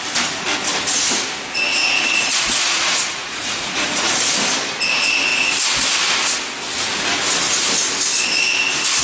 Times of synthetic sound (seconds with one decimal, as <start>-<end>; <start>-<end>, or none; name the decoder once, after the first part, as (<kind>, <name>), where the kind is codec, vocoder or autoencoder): 1.8-4.1 (vocoder, Vocos)